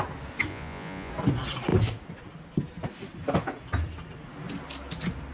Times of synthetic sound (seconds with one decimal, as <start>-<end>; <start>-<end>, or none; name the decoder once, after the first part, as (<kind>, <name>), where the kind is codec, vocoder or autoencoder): 0.5-1.1 (vocoder, Vocos)